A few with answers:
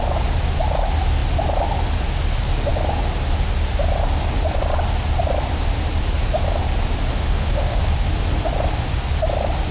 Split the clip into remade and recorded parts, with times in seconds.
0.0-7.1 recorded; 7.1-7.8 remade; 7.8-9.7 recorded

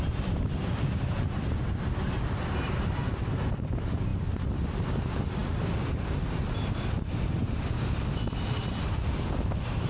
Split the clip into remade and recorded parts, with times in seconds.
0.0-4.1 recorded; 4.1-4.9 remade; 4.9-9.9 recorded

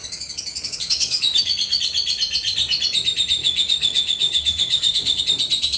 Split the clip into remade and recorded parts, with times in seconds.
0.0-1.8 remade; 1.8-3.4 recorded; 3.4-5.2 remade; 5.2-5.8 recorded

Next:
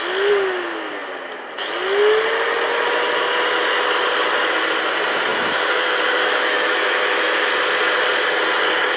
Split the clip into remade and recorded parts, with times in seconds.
0.0-5.3 recorded; 5.3-7.5 remade; 7.5-9.0 recorded

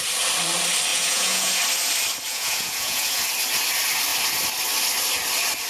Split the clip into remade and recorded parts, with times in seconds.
0.0-0.9 recorded; 0.9-1.6 remade; 1.6-2.3 recorded; 2.3-3.2 remade; 3.2-5.7 recorded

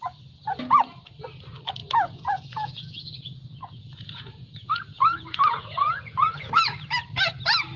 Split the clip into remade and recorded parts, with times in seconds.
0.0-1.8 recorded; 1.8-6.5 remade; 6.5-7.8 recorded

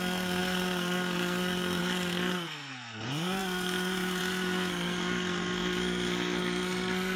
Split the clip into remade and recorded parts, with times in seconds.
0.0-7.2 remade